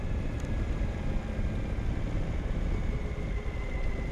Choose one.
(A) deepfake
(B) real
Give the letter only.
B